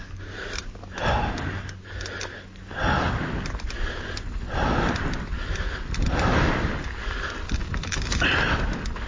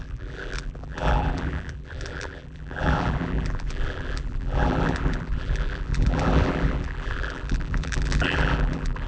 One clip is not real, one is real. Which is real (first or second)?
first